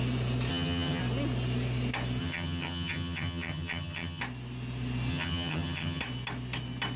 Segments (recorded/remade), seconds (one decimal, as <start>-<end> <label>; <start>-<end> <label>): 0.0-0.5 recorded; 0.5-1.0 remade; 1.0-2.2 recorded; 2.2-4.2 remade; 4.2-5.1 recorded; 5.1-6.0 remade; 6.0-7.0 recorded